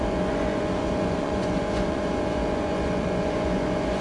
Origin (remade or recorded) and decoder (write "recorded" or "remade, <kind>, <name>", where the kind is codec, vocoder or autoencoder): remade, vocoder, Vocos